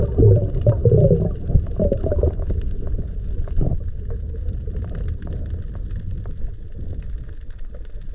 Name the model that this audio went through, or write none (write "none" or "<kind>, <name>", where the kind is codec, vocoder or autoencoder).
none